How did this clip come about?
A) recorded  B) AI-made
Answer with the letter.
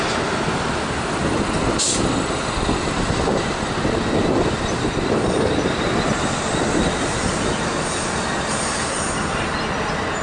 A